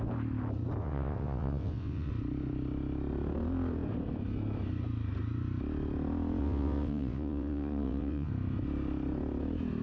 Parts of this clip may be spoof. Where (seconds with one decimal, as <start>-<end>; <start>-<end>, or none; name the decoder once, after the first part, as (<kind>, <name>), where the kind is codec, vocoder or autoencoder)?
0.8-2.1 (vocoder, WaveNeXt); 6.4-8.3